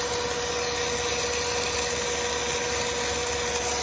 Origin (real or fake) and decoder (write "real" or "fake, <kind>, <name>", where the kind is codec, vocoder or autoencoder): real